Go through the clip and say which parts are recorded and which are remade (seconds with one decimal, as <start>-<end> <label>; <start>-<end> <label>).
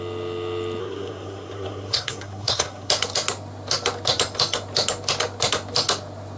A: 0.0-0.8 recorded; 0.8-2.9 remade; 2.9-6.4 recorded